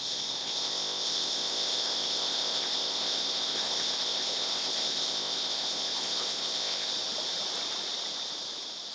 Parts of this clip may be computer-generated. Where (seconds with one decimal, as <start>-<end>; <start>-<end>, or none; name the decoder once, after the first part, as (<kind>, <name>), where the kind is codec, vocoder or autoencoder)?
0.0-6.9 (codec, ZipCodec)

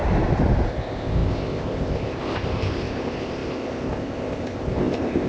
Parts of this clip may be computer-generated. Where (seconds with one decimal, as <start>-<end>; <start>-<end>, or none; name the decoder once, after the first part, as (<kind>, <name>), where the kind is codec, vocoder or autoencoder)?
0.7-5.3 (codec, ZipCodec)

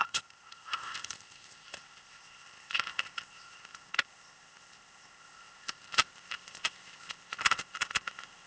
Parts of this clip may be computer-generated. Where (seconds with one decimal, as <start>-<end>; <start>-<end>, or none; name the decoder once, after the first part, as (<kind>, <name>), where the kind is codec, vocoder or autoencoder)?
0.0-8.5 (codec, ZipCodec)

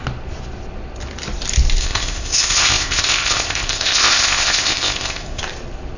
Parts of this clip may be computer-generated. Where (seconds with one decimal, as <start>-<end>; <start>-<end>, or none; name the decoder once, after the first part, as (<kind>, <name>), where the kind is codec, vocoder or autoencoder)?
1.8-5.4 (codec, ZipCodec)

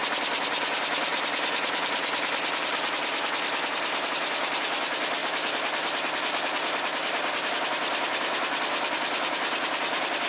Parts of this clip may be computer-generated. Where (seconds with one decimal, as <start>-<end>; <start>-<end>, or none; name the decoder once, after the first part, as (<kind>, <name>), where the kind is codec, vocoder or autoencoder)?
none

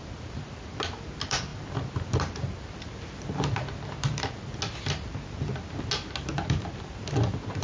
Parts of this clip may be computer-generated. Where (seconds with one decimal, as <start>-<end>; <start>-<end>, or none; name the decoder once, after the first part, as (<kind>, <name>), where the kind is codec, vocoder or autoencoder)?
none

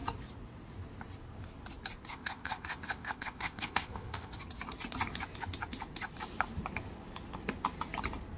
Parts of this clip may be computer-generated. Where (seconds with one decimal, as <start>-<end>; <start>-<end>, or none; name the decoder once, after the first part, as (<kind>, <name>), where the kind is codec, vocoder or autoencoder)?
2.1-4.4 (codec, ZipCodec)